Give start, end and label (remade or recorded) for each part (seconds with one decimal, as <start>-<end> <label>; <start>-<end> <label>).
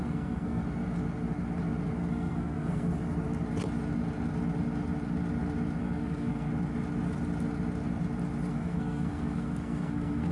0.0-0.6 remade; 0.6-2.1 recorded; 2.1-2.9 remade; 2.9-5.8 recorded; 5.8-6.5 remade; 6.5-8.5 recorded; 8.5-10.3 remade